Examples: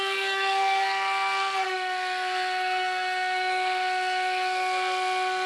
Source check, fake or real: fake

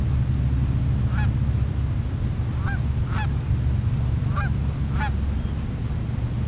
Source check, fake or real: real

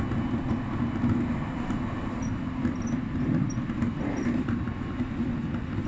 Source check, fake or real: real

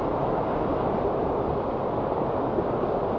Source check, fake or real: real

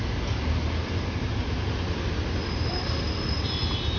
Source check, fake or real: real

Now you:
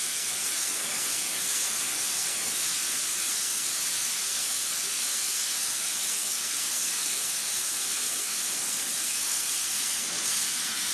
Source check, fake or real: fake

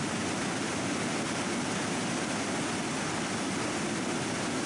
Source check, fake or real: real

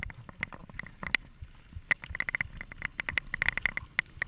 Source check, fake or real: real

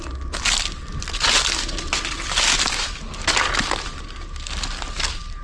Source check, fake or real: real